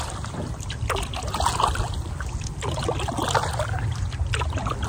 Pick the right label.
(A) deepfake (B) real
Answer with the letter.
B